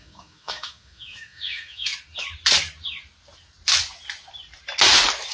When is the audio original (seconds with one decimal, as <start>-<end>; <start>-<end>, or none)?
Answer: 1.9-5.3